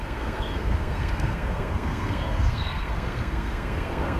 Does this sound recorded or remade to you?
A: remade